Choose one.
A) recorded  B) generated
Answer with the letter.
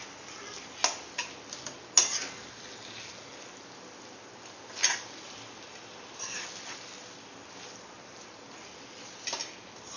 A